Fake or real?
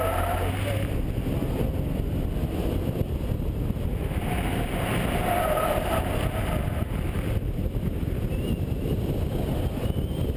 real